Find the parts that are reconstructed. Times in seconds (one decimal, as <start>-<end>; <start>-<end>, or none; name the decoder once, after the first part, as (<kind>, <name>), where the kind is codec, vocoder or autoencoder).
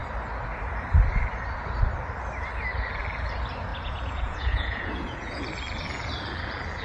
3.7-5.4 (vocoder, Vocos)